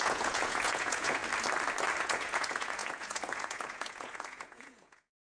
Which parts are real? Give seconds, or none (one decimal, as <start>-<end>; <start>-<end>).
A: 1.2-2.0